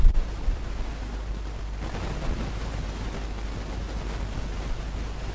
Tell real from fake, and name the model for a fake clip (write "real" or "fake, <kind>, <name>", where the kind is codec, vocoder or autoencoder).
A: real